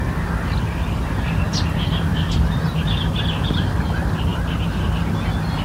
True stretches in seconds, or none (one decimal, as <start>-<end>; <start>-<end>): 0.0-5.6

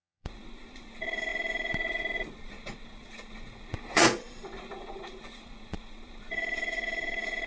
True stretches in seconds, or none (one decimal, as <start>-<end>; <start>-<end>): none

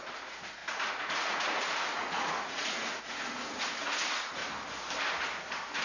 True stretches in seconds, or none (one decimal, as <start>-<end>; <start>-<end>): 4.4-5.1